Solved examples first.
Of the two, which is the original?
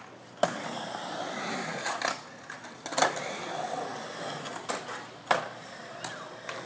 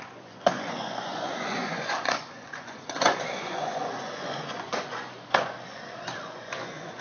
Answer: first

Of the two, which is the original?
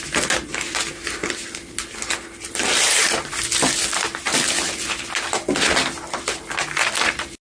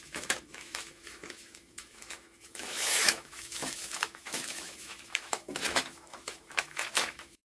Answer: first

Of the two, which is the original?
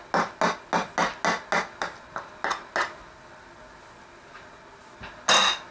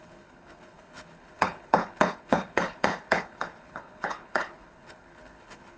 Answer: first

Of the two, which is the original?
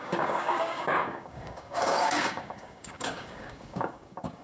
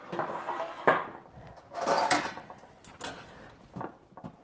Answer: second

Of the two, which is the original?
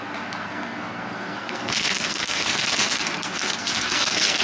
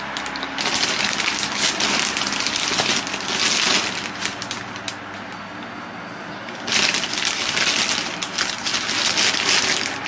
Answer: second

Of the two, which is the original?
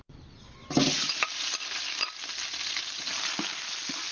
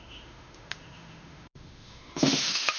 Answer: first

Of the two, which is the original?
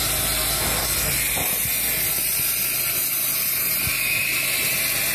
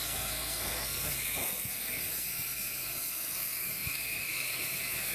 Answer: first